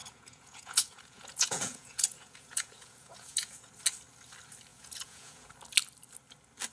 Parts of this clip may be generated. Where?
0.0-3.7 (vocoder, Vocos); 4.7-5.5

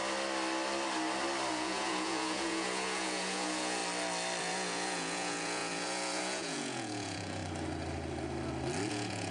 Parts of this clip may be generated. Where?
1.5-3.8 (vocoder, Vocos); 4.4-7.4; 8.9-9.3

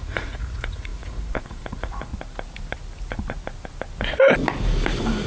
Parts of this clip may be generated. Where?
0.0-2.1 (vocoder, Vocos)